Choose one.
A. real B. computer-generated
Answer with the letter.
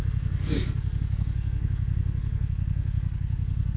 B